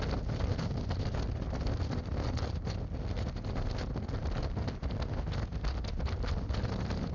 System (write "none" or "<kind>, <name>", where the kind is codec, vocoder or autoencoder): none